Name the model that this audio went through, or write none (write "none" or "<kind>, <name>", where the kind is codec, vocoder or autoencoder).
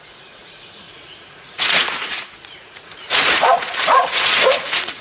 vocoder, Vocos